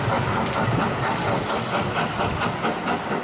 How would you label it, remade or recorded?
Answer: recorded